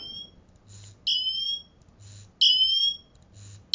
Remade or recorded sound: recorded